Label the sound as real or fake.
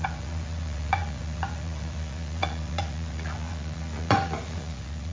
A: fake